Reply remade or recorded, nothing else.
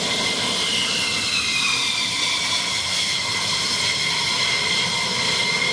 recorded